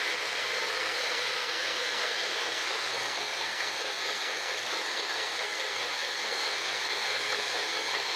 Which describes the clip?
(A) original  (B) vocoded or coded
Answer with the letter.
B